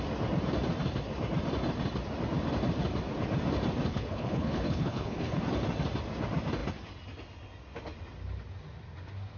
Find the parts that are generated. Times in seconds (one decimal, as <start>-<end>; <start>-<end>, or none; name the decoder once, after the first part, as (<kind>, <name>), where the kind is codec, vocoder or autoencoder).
3.9-5.4 (codec, HILCodec)